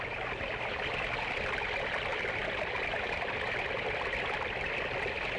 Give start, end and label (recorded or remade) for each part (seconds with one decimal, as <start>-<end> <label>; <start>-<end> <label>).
0.0-5.4 recorded